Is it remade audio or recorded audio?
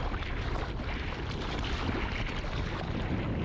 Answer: recorded